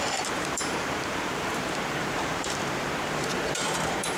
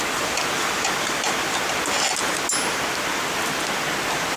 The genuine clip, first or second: second